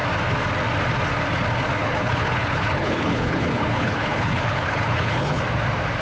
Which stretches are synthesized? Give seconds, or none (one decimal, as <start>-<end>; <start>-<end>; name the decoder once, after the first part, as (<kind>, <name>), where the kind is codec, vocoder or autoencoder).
1.8-5.4 (codec, HILCodec)